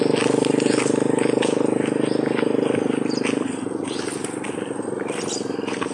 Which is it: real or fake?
real